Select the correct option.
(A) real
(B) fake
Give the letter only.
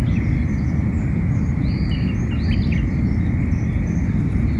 A